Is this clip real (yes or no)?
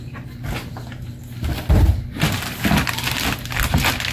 yes